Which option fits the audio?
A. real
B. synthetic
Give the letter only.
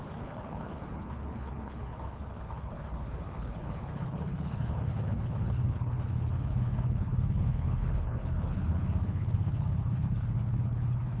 B